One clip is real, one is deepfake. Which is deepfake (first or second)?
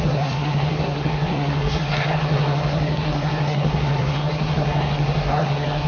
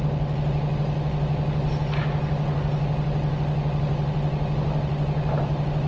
first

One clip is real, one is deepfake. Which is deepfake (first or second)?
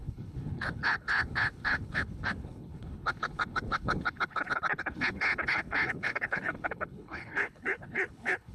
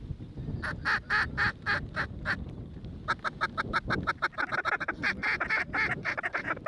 first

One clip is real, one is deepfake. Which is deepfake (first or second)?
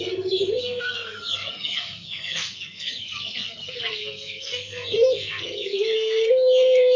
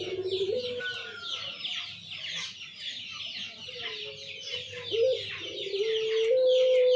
first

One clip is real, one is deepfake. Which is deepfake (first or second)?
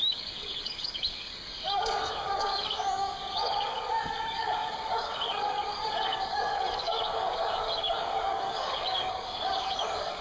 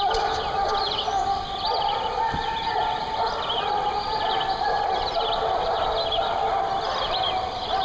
first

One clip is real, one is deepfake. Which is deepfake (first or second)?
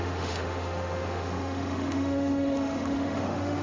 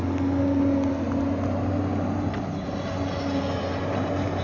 first